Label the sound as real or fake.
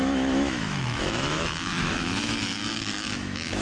fake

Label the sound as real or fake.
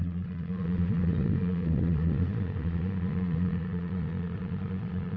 fake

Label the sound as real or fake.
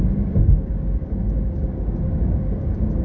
fake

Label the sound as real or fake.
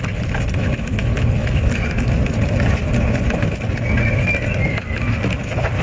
real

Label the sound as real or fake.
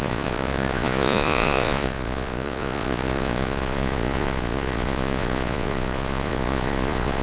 fake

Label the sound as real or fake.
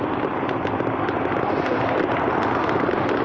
real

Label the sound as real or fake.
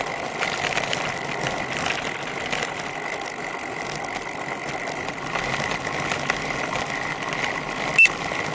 real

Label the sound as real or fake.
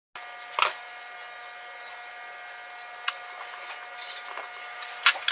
real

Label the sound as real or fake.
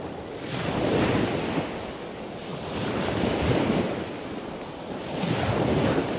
real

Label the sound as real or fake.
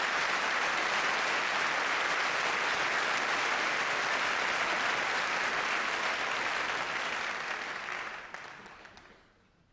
real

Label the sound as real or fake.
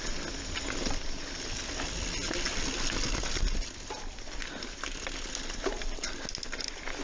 real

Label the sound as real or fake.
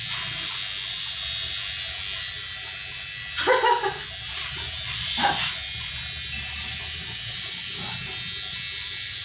real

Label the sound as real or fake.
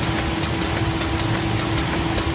real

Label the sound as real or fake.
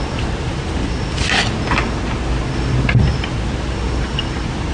real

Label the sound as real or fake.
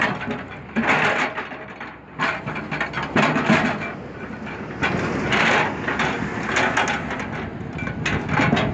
real